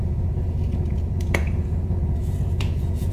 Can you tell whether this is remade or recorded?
remade